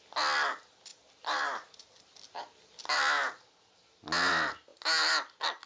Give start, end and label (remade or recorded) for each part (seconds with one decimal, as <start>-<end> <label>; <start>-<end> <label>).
0.0-5.7 recorded